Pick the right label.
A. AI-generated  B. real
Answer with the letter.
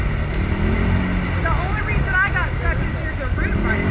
B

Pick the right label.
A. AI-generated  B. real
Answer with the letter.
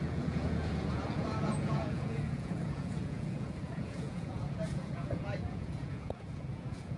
A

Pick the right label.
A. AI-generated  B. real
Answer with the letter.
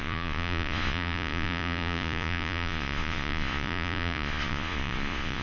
A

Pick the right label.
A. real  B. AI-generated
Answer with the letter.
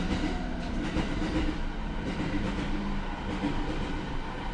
A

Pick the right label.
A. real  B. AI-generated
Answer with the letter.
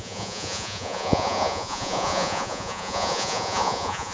B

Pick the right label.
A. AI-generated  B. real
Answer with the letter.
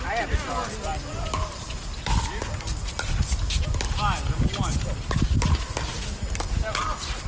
B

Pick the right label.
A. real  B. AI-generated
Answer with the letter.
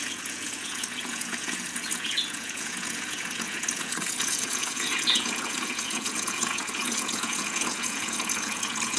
B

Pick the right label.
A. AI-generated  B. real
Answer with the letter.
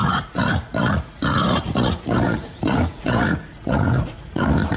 A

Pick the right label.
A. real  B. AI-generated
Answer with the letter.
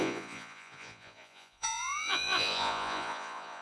B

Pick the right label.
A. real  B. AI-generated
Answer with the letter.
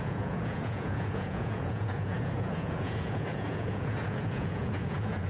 B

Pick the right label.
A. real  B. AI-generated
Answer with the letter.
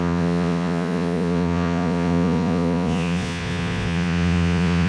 B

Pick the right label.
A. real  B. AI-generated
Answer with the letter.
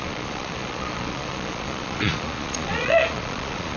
B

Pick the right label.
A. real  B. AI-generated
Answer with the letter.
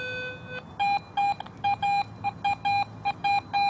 A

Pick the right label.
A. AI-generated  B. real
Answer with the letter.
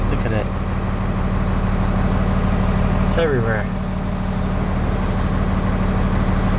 B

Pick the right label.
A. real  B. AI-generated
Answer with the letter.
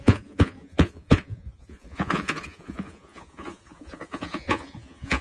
B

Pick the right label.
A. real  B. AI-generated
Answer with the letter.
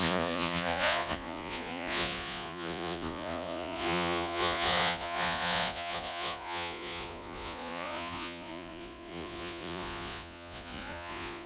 B